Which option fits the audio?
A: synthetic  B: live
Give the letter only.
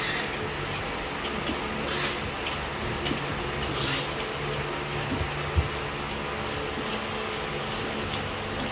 B